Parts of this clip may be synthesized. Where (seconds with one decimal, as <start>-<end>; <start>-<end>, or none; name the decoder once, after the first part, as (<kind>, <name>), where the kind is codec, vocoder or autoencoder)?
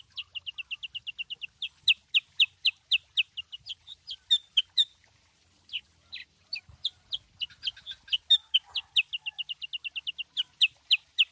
3.7-4.2 (vocoder, BigVGAN v2); 6.2-7.1